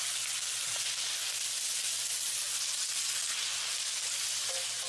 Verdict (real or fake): real